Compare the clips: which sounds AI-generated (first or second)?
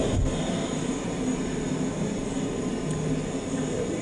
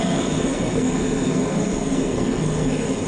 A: second